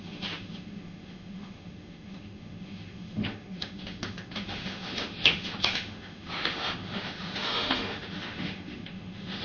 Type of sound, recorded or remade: remade